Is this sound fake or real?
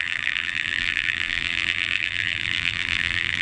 fake